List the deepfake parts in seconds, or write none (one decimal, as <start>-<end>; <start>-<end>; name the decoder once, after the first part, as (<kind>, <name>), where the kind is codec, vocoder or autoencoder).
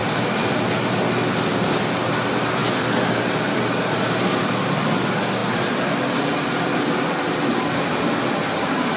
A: none